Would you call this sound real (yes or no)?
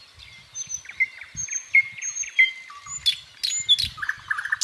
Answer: yes